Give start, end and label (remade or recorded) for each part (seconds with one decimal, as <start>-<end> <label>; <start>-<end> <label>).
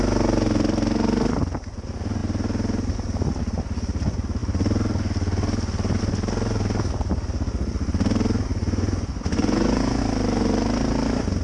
0.0-8.5 recorded; 8.5-10.0 remade; 10.0-11.4 recorded